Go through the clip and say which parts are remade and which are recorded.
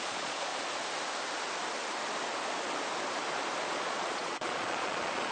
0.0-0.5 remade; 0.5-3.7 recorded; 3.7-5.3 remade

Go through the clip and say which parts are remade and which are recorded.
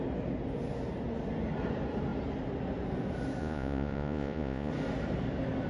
0.0-3.4 recorded; 3.4-4.7 remade; 4.7-5.7 recorded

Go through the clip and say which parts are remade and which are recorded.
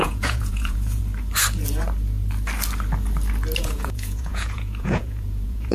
0.0-1.0 remade; 1.0-3.6 recorded; 3.6-5.7 remade